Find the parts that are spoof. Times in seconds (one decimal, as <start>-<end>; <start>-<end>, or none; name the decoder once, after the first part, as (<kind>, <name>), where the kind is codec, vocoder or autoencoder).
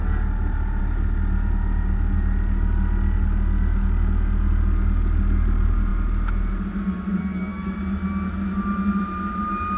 7.2-7.8 (codec, SNAC)